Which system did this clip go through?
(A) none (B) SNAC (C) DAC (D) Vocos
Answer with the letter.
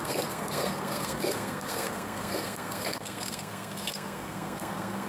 B